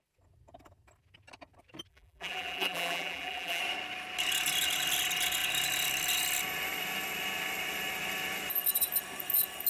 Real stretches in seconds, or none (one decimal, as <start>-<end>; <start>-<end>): 0.0-1.9; 3.6-9.7